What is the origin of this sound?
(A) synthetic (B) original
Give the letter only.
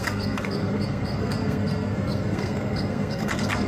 A